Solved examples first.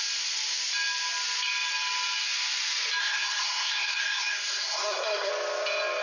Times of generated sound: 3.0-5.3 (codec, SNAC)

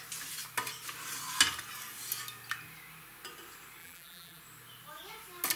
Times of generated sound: 3.8-4.4 (vocoder, BigVGAN v2)

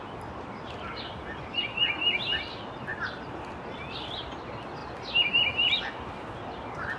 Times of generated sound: none

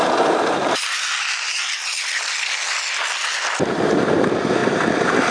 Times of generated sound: 0.0-1.9 (vocoder, BigVGAN v2); 3.6-5.3

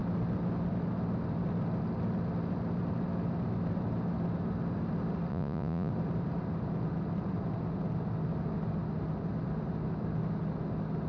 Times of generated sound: 5.3-5.9 (vocoder, Vocos)

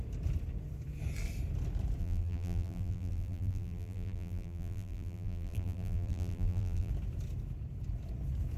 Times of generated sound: 2.0-6.9 (vocoder, BigVGAN v2)

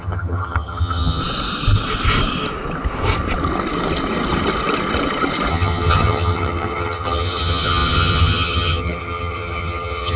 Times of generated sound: 0.0-1.2 (vocoder, HiFi-GAN); 5.5-10.2